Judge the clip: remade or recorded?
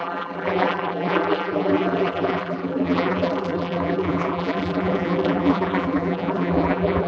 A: remade